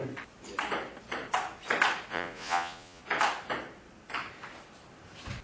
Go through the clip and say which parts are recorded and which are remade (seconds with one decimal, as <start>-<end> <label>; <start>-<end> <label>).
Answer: 0.0-2.1 recorded; 2.1-3.0 remade; 3.0-5.4 recorded